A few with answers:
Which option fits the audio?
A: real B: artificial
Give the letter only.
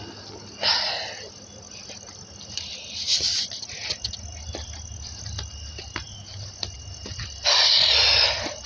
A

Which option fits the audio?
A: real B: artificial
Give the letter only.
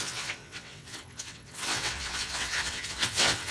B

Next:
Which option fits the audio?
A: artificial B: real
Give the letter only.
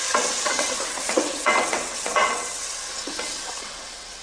A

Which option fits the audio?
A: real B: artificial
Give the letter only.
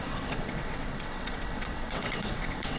B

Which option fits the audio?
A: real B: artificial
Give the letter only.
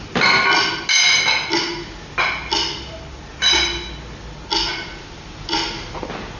A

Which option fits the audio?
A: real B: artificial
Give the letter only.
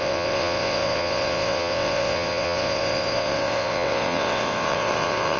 B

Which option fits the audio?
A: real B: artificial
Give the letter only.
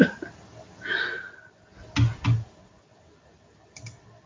A